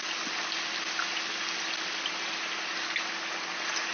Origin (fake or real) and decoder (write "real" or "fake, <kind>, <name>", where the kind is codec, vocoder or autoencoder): real